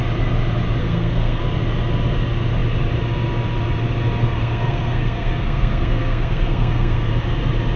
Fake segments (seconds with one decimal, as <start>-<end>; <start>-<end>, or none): 0.8-1.4; 4.2-7.1